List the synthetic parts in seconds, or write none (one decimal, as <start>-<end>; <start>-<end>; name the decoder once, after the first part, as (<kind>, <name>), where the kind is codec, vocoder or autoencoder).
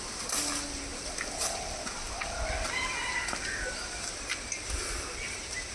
none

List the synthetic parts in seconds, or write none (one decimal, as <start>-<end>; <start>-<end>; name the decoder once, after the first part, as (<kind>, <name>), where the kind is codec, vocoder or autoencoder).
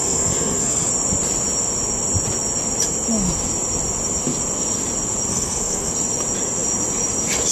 0.0-0.9 (codec, SNAC); 5.3-5.9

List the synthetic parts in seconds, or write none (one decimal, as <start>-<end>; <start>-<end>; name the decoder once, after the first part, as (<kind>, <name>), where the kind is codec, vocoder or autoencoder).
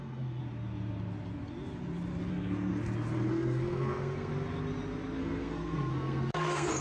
0.0-0.4 (codec, SNAC); 2.3-2.7; 3.3-4.3; 5.2-6.8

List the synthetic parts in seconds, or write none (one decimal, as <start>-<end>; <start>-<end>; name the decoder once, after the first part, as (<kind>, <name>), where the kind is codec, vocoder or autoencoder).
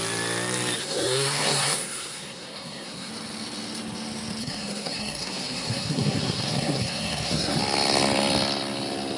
0.8-3.1 (codec, SNAC); 4.4-7.6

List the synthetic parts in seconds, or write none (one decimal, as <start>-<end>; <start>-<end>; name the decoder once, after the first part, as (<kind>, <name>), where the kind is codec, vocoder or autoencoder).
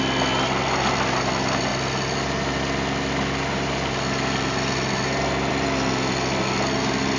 none